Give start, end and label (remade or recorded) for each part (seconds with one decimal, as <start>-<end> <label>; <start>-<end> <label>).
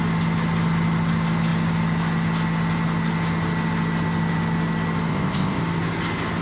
0.0-5.1 recorded; 5.1-5.6 remade; 5.6-6.4 recorded